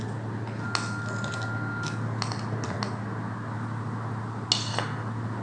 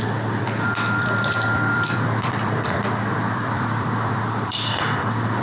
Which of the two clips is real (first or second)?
first